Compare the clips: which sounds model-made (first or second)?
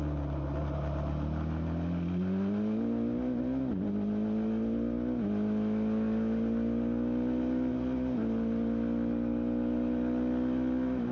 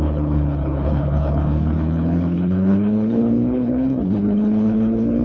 second